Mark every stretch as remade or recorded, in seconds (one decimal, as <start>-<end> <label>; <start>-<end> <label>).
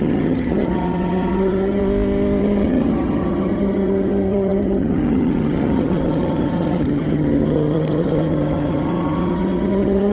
0.0-1.8 remade; 1.8-2.4 recorded; 2.4-10.1 remade